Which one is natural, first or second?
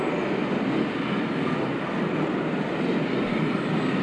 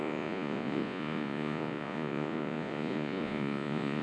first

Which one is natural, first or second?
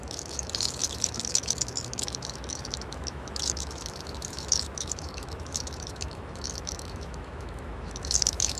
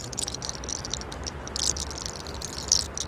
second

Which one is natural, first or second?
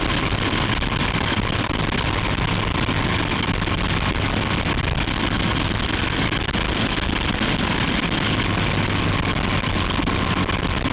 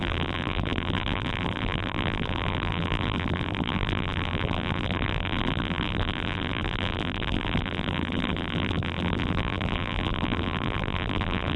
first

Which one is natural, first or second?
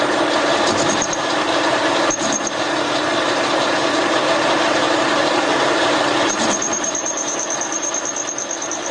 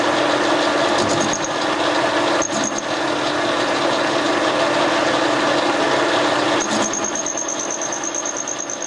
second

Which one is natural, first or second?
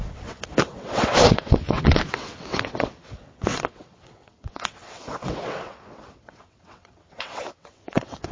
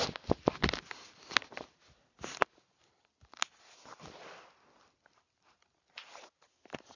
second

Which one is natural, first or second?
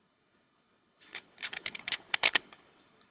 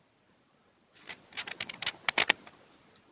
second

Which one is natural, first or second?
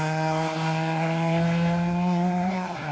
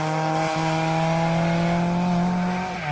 second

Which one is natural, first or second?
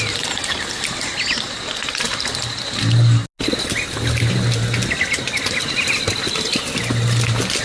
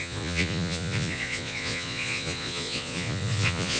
first